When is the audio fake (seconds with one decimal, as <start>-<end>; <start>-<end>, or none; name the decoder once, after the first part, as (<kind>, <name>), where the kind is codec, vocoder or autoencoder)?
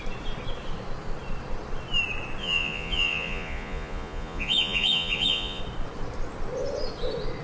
2.4-5.6 (vocoder, Vocos)